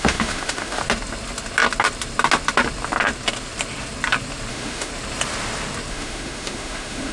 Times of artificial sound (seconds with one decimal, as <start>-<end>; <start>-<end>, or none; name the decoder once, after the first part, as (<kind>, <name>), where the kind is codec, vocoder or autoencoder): 0.0-0.8 (autoencoder, DAC-VAE); 4.5-4.9; 5.9-7.1